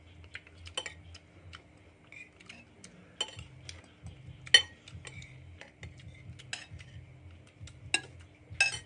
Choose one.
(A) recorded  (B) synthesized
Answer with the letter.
A